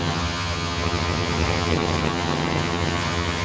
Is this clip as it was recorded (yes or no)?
no